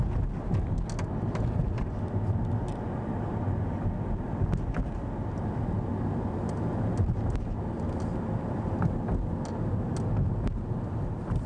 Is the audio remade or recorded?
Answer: recorded